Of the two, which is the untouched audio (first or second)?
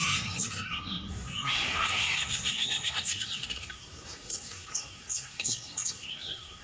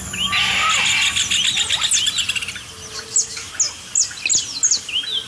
second